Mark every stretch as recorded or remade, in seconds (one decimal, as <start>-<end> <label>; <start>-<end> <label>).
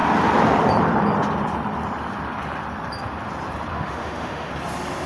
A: 0.0-3.7 recorded; 3.7-4.5 remade; 4.5-5.1 recorded